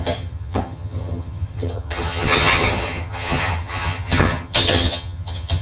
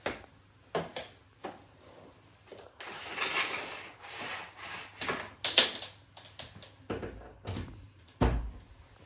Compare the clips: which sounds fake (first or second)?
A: first